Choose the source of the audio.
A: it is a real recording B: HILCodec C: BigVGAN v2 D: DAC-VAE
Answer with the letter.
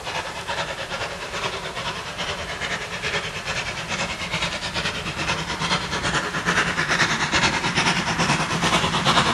C